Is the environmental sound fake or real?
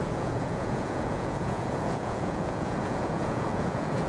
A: fake